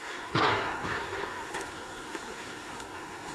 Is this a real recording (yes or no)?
no